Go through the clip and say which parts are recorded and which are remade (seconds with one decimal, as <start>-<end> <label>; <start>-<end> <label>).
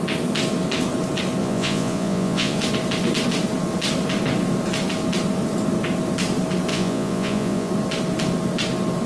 0.0-1.4 recorded; 1.4-2.6 remade; 2.6-6.7 recorded; 6.7-7.7 remade; 7.7-9.1 recorded